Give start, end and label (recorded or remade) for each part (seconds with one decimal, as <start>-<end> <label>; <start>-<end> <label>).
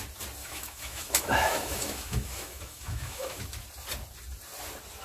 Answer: 0.0-0.4 recorded; 0.4-3.4 remade; 3.4-5.0 recorded